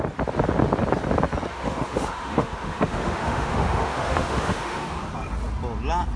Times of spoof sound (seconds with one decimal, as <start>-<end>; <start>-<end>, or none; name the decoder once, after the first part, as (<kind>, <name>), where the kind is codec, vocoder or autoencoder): 1.5-5.0 (autoencoder, DAC-VAE)